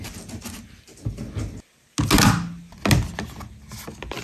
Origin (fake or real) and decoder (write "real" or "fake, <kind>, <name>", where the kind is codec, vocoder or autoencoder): real